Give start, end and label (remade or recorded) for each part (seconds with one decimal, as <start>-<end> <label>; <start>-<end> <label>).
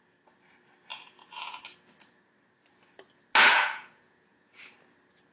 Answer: 0.0-0.9 recorded; 0.9-1.6 remade; 1.6-3.5 recorded; 3.5-4.6 remade; 4.6-5.3 recorded